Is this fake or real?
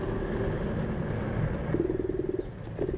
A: real